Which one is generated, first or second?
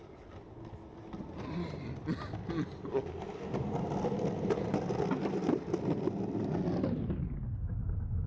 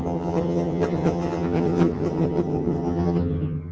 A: second